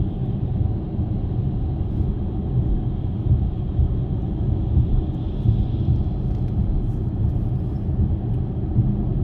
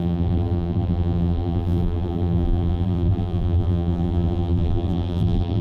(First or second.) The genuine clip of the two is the first